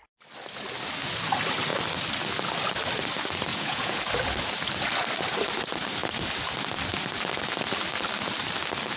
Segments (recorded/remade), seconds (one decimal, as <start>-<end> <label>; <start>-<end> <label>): 0.0-3.5 recorded; 3.5-4.0 remade; 4.0-9.0 recorded